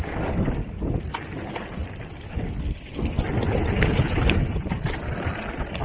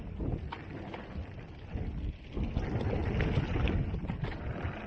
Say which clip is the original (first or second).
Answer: second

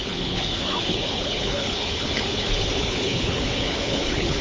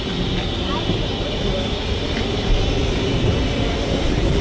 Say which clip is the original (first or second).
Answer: second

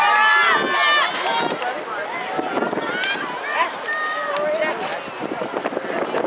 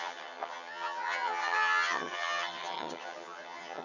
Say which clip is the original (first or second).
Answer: first